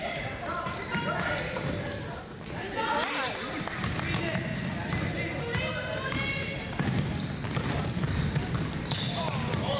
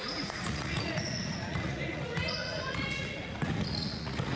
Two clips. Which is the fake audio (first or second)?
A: second